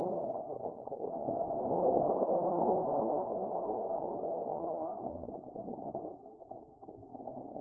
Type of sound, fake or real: fake